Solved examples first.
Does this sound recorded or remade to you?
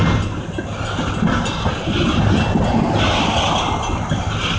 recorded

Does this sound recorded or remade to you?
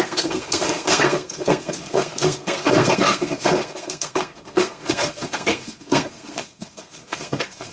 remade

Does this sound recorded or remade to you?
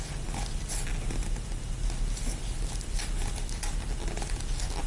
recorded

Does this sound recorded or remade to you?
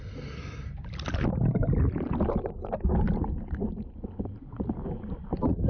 recorded